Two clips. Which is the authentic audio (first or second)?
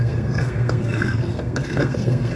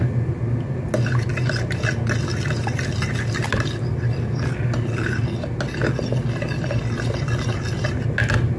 second